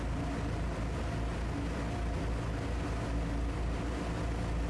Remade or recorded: recorded